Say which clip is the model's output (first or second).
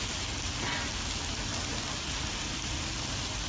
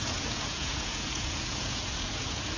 second